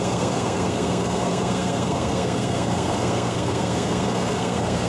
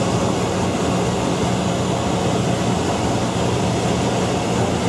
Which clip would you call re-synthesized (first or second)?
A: first